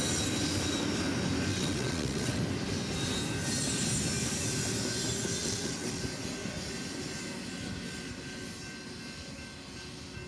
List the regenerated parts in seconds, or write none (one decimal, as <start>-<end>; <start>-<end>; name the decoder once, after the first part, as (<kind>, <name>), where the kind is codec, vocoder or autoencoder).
1.5-2.4 (vocoder, WaveNeXt); 5.4-6.0